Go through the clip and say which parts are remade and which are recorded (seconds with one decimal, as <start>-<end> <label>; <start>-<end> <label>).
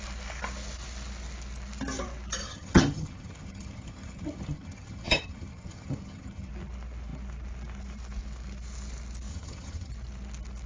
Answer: 0.0-2.4 recorded; 2.4-6.5 remade; 6.5-9.3 recorded; 9.3-9.9 remade; 9.9-10.7 recorded